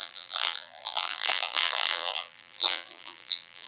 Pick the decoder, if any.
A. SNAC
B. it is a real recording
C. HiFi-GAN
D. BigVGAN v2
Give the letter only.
D